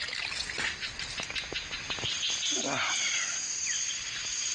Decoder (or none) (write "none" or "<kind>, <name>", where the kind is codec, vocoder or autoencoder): none